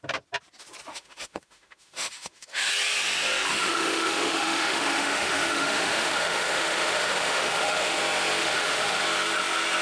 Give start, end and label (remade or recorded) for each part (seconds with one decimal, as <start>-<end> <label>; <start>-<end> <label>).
0.0-0.9 recorded; 0.9-2.7 remade; 2.7-3.5 recorded; 3.5-8.0 remade; 8.0-8.4 recorded; 8.4-9.0 remade; 9.0-9.8 recorded